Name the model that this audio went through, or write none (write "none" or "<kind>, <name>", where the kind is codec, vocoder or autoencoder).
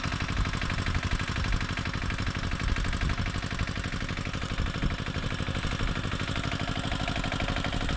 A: none